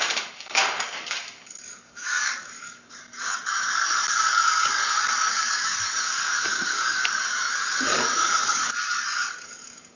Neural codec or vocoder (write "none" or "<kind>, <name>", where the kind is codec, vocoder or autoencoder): codec, DAC